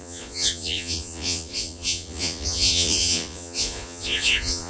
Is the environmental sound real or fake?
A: fake